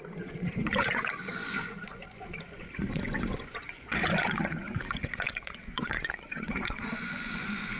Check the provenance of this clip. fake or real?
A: fake